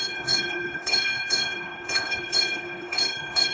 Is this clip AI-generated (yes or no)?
yes